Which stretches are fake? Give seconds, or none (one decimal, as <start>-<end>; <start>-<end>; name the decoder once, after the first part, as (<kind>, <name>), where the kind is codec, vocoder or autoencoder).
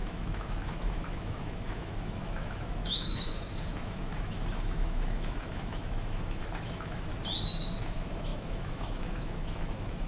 0.0-7.1 (autoencoder, DAC-VAE); 7.8-10.1